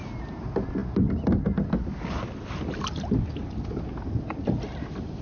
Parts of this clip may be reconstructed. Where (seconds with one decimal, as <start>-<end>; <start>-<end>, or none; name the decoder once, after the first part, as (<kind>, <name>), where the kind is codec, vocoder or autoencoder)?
none